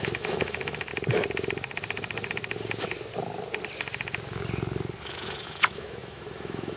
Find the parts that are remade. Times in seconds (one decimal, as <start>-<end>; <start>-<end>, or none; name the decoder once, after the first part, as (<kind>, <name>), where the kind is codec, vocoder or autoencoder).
0.0-0.9 (autoencoder, DAC-VAE); 5.0-6.8